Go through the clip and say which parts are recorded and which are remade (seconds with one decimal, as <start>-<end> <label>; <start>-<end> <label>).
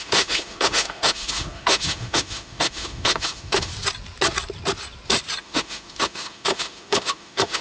0.0-3.7 remade; 3.7-5.4 recorded; 5.4-7.6 remade